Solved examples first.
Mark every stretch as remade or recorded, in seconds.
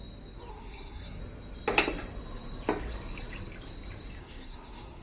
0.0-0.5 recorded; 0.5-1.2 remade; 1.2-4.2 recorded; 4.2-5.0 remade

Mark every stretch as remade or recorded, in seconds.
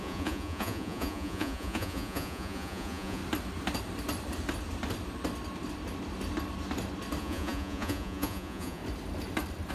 0.0-3.2 remade; 3.2-7.2 recorded; 7.2-8.8 remade; 8.8-9.7 recorded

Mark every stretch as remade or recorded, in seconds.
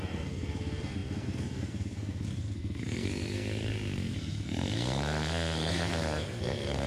0.0-6.9 remade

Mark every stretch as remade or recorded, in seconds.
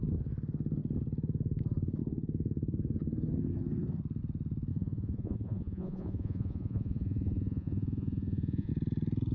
0.0-4.7 recorded; 4.7-8.7 remade; 8.7-9.3 recorded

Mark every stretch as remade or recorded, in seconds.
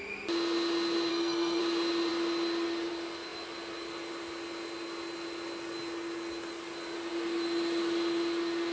0.0-1.1 recorded; 1.1-1.6 remade; 1.6-8.7 recorded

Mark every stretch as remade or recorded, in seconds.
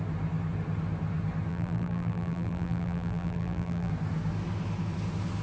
0.0-1.5 recorded; 1.5-3.9 remade; 3.9-5.4 recorded